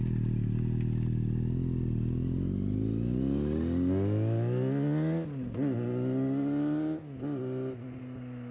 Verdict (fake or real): real